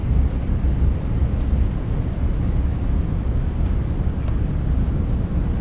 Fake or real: real